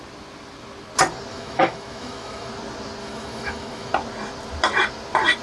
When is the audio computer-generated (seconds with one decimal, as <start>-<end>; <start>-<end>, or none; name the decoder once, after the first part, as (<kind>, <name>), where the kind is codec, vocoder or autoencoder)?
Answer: 1.3-2.5 (autoencoder, DAC-VAE); 3.0-3.9